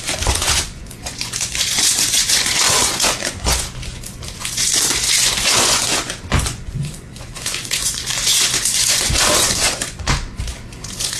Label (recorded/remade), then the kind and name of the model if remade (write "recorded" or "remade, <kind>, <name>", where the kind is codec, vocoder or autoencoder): remade, vocoder, Vocos